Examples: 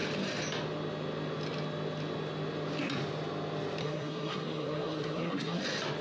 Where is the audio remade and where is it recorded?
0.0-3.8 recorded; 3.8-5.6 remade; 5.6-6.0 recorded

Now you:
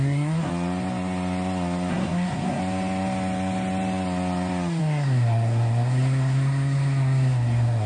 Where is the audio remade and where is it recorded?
0.0-0.5 remade; 0.5-1.9 recorded; 1.9-2.6 remade; 2.6-4.8 recorded; 4.8-7.9 remade

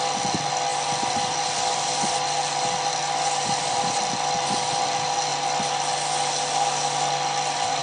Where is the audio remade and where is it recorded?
0.0-7.8 recorded

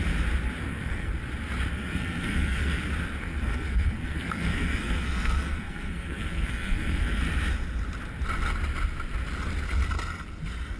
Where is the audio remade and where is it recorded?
0.0-0.6 recorded; 0.6-1.1 remade; 1.1-1.7 recorded; 1.7-2.8 remade; 2.8-3.2 recorded; 3.2-7.2 remade; 7.2-10.8 recorded

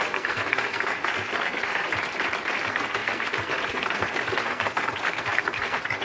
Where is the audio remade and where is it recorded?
0.0-1.9 remade; 1.9-2.5 recorded; 2.5-6.0 remade

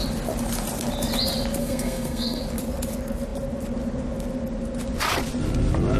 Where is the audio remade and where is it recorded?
0.0-1.6 recorded; 1.6-2.4 remade; 2.4-6.0 recorded